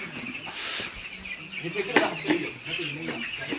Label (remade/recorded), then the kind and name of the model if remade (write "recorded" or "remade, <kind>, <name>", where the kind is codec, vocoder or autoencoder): recorded